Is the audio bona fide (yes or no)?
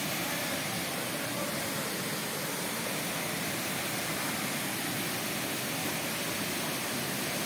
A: yes